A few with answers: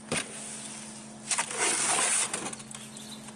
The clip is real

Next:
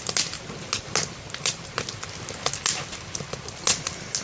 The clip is real